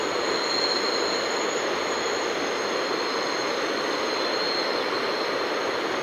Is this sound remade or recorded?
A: recorded